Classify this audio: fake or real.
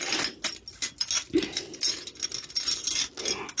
real